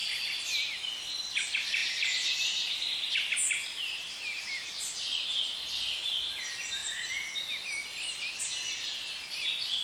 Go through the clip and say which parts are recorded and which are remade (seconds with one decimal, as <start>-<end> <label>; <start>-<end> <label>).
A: 0.0-1.8 recorded; 1.8-3.2 remade; 3.2-3.6 recorded; 3.6-4.5 remade; 4.5-9.8 recorded